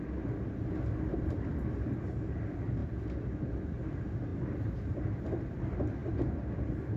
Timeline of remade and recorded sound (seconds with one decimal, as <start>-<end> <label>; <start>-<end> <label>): 0.0-2.8 recorded; 2.8-3.9 remade; 3.9-4.3 recorded; 4.3-5.2 remade; 5.2-7.0 recorded

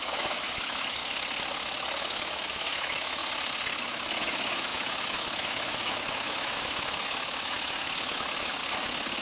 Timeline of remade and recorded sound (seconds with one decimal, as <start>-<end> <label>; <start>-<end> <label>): 0.0-1.0 remade; 1.0-2.0 recorded; 2.0-3.2 remade; 3.2-3.8 recorded; 3.8-8.6 remade; 8.6-9.2 recorded

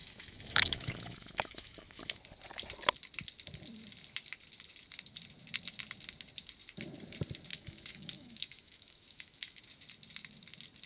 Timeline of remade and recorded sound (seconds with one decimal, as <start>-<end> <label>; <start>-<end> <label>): 0.0-2.0 remade; 2.0-7.5 recorded; 7.5-9.6 remade; 9.6-10.9 recorded

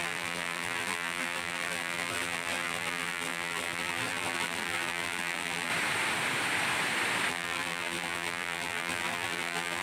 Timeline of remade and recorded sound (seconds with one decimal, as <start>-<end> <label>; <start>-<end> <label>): 0.0-5.7 remade; 5.7-7.3 recorded; 7.3-9.8 remade

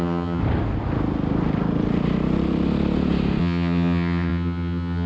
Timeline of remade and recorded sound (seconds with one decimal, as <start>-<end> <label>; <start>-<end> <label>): 0.0-0.4 remade; 0.4-3.4 recorded; 3.4-5.1 remade

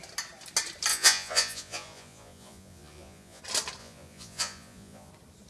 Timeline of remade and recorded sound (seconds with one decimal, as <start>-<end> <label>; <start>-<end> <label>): 0.0-0.9 recorded; 0.9-3.4 remade; 3.4-3.8 recorded; 3.8-5.1 remade; 5.1-5.5 recorded

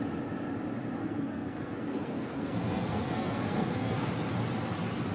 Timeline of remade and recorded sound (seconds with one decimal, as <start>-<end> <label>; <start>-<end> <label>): 0.0-1.0 recorded; 1.0-4.1 remade; 4.1-5.1 recorded

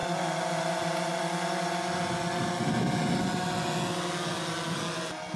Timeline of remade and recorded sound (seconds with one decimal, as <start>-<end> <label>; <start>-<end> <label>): 0.0-5.4 recorded